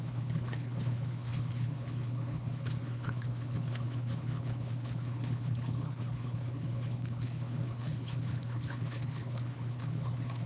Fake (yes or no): yes